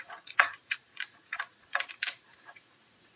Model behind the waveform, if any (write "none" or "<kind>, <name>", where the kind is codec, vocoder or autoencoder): vocoder, Vocos